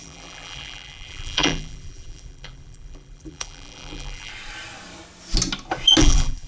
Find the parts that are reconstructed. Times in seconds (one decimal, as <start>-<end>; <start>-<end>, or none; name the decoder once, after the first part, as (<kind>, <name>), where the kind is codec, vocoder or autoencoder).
0.0-4.3 (vocoder, BigVGAN v2); 6.0-6.5